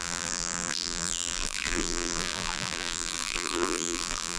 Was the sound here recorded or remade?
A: remade